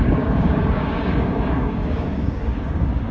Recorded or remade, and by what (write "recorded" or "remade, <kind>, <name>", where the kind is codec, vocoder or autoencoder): remade, codec, DAC